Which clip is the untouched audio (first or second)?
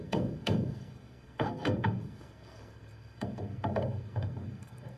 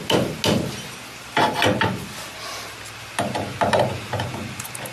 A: second